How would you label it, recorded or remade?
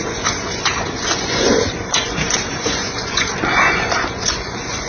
remade